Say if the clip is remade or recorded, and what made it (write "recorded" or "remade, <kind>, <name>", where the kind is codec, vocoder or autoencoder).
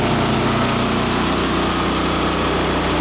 recorded